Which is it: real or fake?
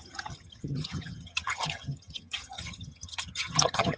fake